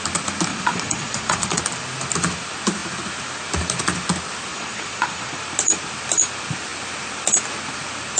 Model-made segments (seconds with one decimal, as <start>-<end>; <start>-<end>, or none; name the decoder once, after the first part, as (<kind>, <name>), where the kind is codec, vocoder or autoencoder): 0.5-1.6 (vocoder, Vocos); 4.5-5.4